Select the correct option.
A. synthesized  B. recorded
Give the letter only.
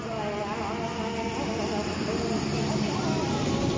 B